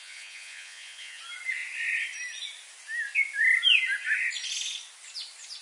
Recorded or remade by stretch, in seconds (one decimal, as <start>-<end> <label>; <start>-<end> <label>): 0.0-1.2 remade; 1.2-5.6 recorded